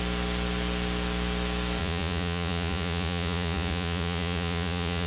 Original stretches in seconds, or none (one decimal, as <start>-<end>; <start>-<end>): 0.0-1.8